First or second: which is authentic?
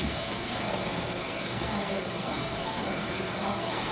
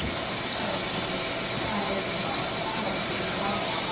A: second